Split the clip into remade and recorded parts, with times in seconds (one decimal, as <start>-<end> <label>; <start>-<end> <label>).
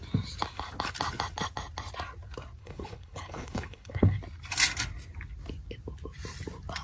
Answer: 0.0-2.6 recorded; 2.6-4.2 remade; 4.2-6.8 recorded